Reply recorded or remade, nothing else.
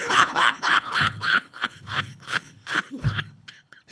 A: remade